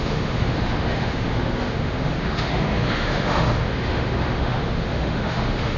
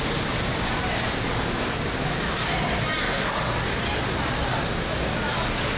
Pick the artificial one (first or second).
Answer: first